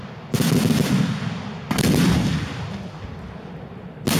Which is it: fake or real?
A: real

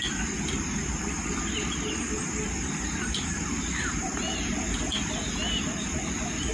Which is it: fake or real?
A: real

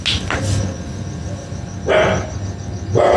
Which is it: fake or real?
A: real